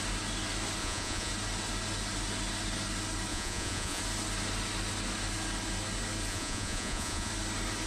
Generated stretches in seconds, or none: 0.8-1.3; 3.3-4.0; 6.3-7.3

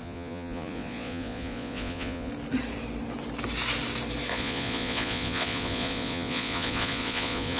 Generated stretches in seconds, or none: 0.0-2.3; 4.3-7.6